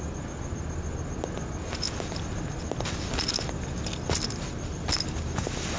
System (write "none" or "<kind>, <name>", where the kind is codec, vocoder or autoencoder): none